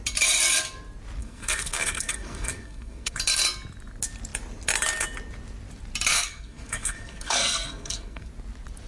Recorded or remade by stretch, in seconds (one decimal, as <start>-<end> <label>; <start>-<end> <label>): 0.0-1.2 recorded; 1.2-3.2 remade; 3.2-6.1 recorded; 6.1-8.3 remade; 8.3-8.9 recorded